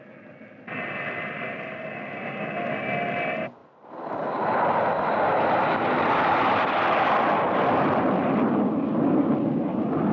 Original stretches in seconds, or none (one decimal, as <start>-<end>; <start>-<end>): 0.0-10.1